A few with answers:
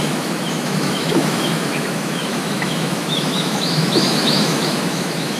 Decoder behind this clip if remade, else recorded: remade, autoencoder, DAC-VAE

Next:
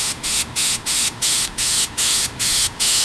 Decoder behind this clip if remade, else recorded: remade, autoencoder, DAC-VAE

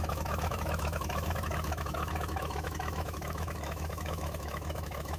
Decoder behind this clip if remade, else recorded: remade, autoencoder, DAC-VAE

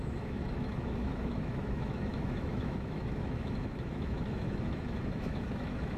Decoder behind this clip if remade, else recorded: remade, autoencoder, DAC-VAE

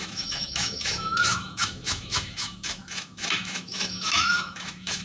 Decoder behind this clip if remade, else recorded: remade, autoencoder, DAC-VAE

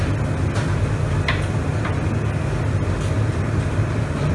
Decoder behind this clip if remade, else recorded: recorded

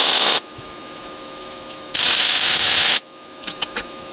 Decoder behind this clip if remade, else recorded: remade, autoencoder, DAC-VAE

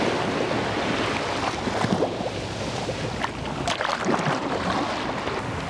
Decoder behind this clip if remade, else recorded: recorded